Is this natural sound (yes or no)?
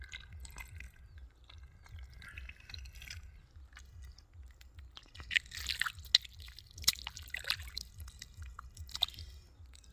yes